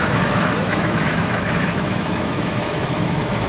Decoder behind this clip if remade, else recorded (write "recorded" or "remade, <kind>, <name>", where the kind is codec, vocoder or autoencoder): remade, autoencoder, DAC-VAE